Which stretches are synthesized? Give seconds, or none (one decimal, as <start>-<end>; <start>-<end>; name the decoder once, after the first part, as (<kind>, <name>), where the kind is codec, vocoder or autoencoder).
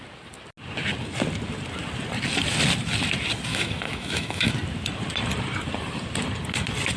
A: 3.5-4.5 (autoencoder, DAC-VAE)